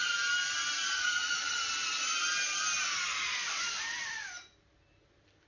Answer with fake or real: real